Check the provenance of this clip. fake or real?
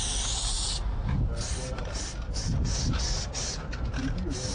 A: real